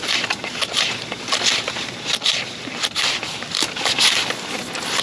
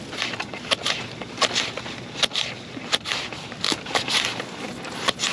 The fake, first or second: first